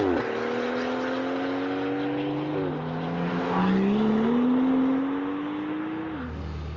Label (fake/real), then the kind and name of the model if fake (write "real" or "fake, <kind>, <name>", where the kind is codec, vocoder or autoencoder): real